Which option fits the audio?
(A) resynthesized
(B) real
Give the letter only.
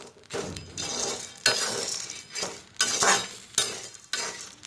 B